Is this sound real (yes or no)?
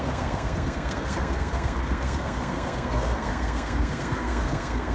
no